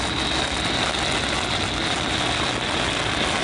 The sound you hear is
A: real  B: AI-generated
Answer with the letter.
A